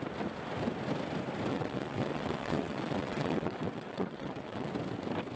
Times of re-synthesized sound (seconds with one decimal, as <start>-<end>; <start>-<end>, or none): 1.5-4.7